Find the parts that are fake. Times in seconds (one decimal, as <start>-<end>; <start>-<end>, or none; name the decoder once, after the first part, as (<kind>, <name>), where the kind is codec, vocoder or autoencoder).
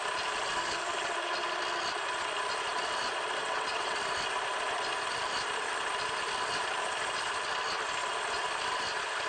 3.4-4.0 (vocoder, WaveNeXt)